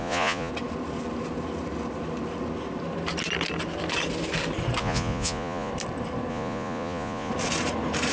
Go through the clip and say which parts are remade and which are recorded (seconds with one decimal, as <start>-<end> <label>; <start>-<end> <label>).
0.0-0.5 remade; 0.5-4.8 recorded; 4.8-5.7 remade; 5.7-6.3 recorded; 6.3-7.3 remade; 7.3-8.1 recorded